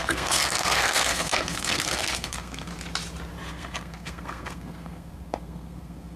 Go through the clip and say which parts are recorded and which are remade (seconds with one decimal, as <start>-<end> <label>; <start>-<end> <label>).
0.0-2.7 remade; 2.7-3.5 recorded; 3.5-6.2 remade